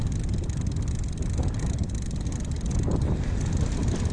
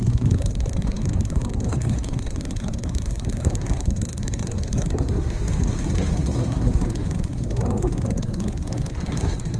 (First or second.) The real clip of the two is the first